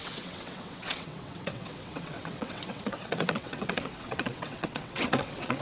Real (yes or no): no